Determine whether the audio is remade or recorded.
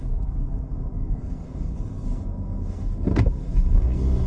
remade